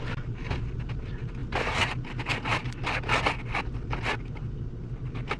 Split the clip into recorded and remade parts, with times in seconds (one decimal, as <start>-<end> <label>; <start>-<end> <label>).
0.0-5.4 recorded